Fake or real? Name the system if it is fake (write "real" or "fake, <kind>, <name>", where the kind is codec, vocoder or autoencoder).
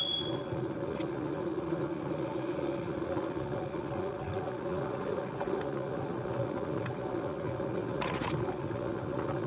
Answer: fake, vocoder, Vocos